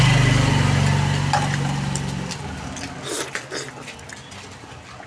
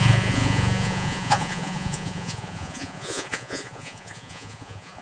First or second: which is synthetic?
second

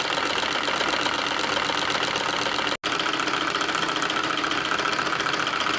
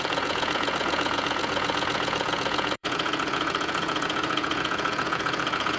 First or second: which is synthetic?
second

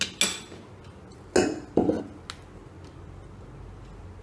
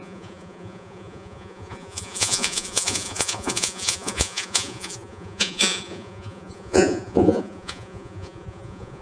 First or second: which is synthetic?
second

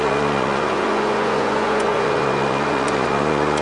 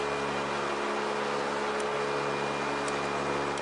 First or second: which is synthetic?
first